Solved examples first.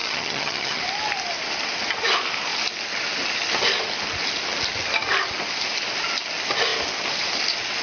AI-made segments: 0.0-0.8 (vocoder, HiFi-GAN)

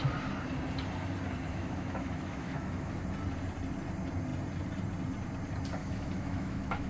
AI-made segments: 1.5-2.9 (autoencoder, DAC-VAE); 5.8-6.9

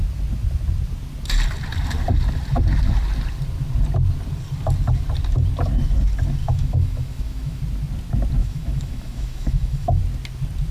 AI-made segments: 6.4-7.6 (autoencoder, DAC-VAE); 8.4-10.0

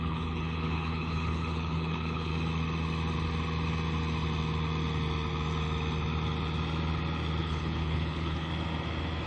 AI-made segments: 0.0-2.3 (codec, HILCodec); 7.4-8.5

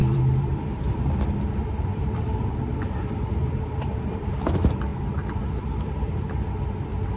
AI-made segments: 0.0-4.3 (vocoder, BigVGAN v2); 4.9-6.2

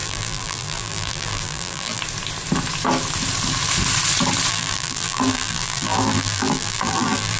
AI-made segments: 0.0-2.0 (vocoder, BigVGAN v2); 4.5-7.4